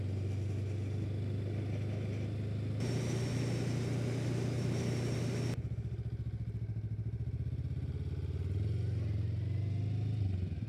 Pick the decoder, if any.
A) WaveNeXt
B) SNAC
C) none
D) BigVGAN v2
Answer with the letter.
C